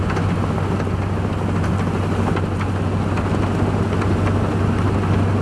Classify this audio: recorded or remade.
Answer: recorded